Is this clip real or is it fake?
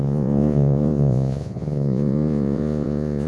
fake